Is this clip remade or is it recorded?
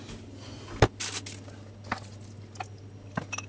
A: recorded